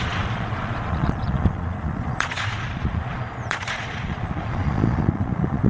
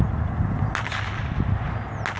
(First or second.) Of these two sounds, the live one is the second